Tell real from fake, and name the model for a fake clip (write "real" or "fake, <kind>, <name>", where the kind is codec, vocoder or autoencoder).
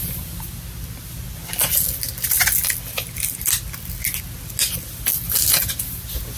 real